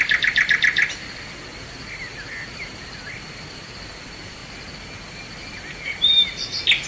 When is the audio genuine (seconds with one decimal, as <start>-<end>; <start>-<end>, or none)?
0.0-6.9